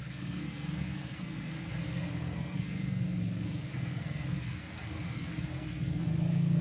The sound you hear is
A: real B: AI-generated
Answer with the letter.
B